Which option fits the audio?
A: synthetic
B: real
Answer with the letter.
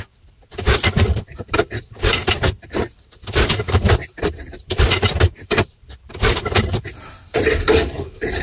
A